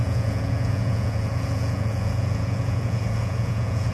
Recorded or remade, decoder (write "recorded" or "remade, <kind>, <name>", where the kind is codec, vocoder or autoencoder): remade, vocoder, Vocos